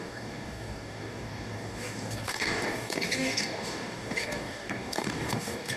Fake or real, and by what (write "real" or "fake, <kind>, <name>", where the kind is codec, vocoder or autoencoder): fake, codec, DAC